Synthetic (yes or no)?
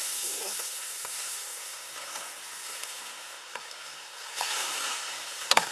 yes